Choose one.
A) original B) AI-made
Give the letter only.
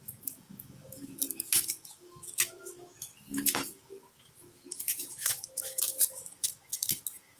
B